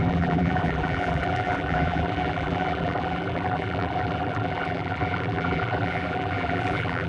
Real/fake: fake